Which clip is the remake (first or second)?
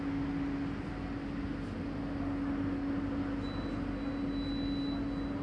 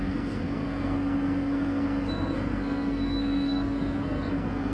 second